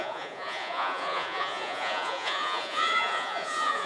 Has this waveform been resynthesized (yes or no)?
yes